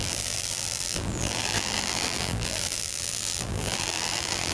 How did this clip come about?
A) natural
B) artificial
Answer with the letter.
B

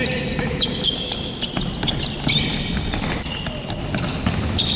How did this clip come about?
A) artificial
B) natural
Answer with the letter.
B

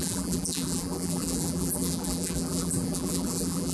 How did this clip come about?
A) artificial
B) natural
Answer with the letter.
A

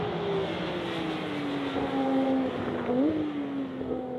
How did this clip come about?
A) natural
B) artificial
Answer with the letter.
A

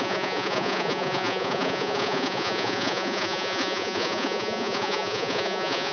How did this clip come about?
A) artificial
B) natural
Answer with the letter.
A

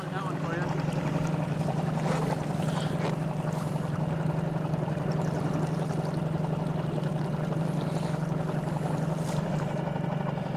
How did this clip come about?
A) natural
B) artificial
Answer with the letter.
A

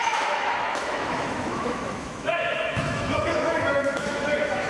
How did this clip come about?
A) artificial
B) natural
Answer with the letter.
A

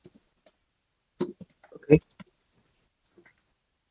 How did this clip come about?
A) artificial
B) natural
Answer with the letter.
B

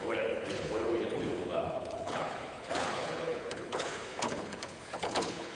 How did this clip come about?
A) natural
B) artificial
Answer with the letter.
B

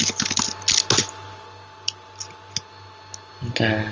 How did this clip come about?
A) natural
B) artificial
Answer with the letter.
A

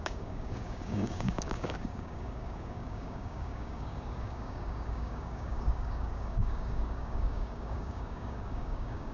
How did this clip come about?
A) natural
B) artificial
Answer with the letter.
B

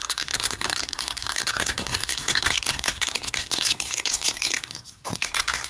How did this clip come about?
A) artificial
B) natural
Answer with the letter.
A